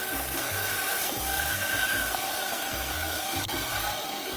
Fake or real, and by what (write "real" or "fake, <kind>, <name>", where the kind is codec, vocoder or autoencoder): fake, codec, SNAC